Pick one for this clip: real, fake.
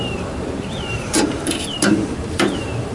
fake